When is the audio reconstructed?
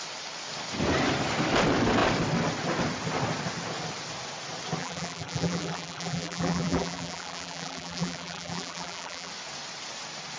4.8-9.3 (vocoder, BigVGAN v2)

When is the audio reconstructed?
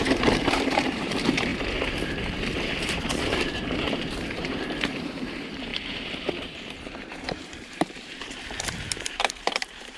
0.0-1.5 (vocoder, BigVGAN v2); 2.5-10.0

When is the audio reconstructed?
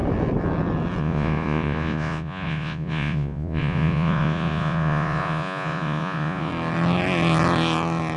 1.0-6.5 (vocoder, Vocos)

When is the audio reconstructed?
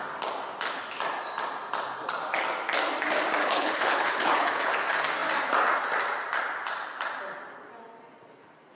3.4-4.7 (codec, HILCodec)